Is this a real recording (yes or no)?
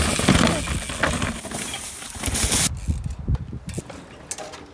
yes